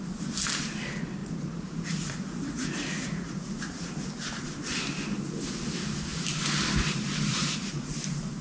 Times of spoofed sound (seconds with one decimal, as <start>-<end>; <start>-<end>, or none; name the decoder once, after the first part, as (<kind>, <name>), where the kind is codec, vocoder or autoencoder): 1.2-3.9 (vocoder, Vocos); 7.3-7.9